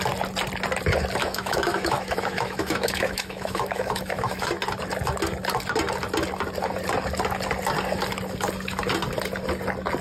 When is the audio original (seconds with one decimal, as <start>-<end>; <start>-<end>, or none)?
0.0-1.2; 4.5-10.0